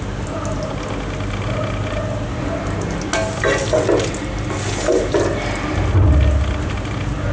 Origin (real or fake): real